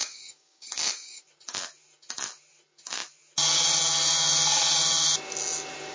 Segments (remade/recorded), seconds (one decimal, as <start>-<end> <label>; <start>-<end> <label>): 0.0-1.2 remade; 1.2-5.9 recorded